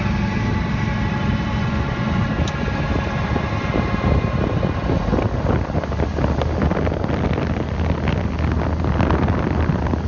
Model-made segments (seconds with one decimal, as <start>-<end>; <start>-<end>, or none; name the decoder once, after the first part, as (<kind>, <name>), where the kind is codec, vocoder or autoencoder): 1.6-2.2 (vocoder, Vocos)